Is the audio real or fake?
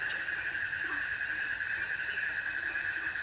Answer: real